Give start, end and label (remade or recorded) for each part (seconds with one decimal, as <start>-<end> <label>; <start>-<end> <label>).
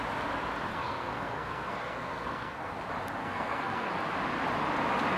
0.0-0.7 recorded; 0.7-2.7 remade; 2.7-3.2 recorded; 3.2-3.9 remade; 3.9-5.2 recorded